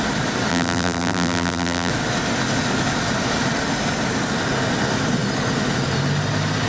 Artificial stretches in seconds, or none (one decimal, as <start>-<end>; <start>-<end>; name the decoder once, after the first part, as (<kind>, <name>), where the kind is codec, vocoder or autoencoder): 0.5-1.9 (vocoder, BigVGAN v2)